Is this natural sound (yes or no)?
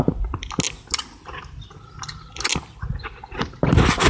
yes